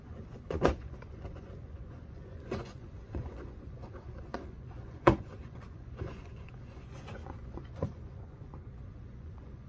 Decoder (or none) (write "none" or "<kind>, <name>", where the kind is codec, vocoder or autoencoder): vocoder, Vocos